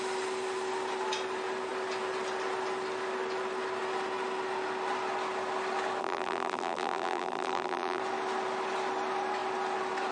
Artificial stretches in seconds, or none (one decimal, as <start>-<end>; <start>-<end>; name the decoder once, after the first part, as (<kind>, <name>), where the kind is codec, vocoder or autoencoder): 6.0-8.0 (vocoder, BigVGAN v2)